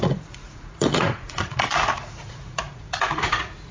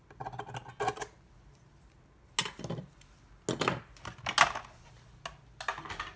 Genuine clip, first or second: second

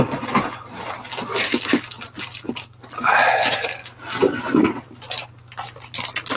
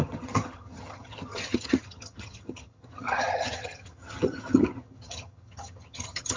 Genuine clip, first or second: first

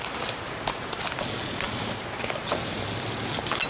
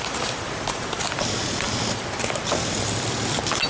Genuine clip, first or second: first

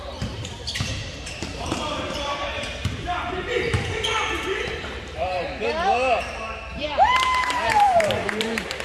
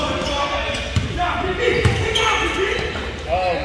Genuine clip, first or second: second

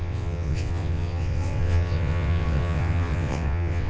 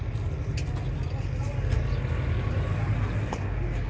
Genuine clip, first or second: second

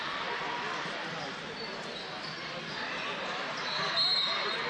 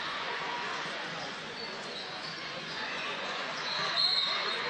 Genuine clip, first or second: first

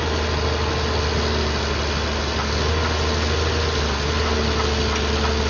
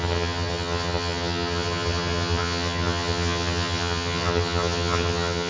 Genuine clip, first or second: first